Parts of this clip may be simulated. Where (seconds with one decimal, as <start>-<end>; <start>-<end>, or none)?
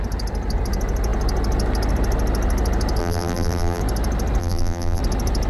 3.0-3.8; 4.4-5.0